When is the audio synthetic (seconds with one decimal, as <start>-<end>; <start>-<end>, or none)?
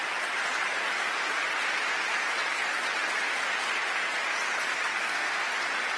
4.9-5.5